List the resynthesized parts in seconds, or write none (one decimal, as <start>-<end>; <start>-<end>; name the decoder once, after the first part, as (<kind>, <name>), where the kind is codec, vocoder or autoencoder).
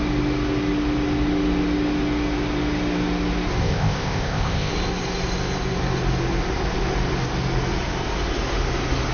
3.6-4.7 (codec, ZipCodec)